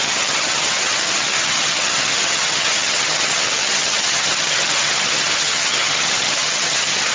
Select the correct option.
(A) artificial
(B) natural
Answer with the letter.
A